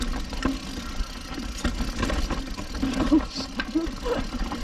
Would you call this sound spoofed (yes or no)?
no